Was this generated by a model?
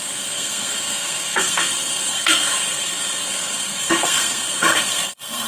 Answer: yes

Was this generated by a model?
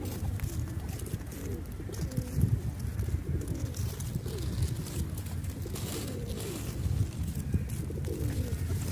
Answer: no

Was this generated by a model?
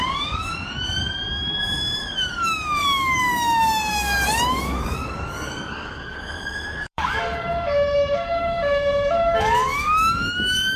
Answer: yes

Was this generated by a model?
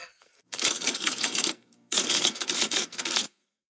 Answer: yes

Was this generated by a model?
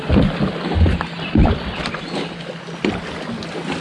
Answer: no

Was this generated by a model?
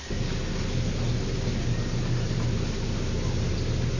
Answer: no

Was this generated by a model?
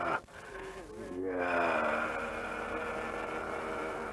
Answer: no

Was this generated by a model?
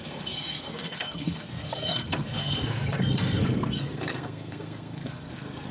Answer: yes